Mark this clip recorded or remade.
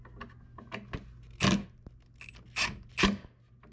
recorded